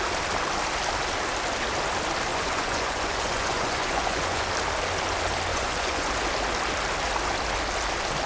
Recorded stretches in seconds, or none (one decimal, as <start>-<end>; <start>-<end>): 0.0-2.3; 4.5-5.5; 6.1-8.3